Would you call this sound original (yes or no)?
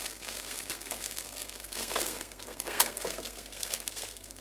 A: no